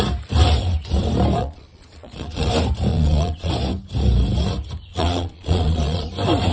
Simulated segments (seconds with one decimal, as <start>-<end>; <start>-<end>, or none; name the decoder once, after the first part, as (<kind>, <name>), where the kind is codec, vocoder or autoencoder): 1.4-2.5 (vocoder, Vocos); 2.9-3.5; 4.9-6.1

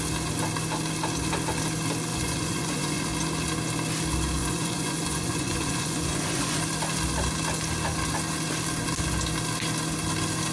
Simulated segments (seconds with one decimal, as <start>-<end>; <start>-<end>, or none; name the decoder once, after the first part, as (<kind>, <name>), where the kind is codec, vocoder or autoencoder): 2.1-3.0 (vocoder, Vocos); 4.4-6.6

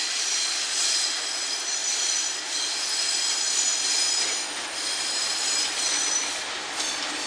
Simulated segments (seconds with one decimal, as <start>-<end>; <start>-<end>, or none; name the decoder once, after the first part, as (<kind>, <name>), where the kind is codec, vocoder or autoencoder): none

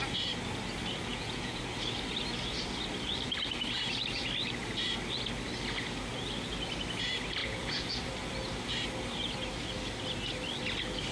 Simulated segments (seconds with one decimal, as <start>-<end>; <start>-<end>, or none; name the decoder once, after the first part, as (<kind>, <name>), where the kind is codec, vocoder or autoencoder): 1.1-1.6 (vocoder, Vocos); 7.4-7.9

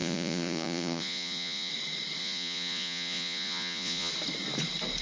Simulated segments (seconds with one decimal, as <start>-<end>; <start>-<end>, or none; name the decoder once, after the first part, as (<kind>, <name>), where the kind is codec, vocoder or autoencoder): 0.0-1.7 (vocoder, Vocos); 2.2-4.1

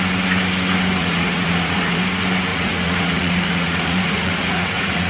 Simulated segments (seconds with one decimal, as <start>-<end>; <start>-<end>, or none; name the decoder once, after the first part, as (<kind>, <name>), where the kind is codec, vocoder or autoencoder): 1.0-2.0 (vocoder, Vocos); 2.5-5.1